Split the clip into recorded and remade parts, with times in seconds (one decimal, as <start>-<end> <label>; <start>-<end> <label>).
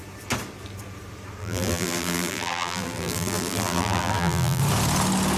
0.0-1.4 recorded; 1.4-4.6 remade; 4.6-5.4 recorded